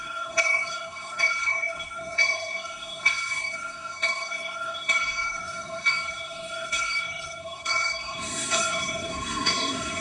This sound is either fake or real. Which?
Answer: fake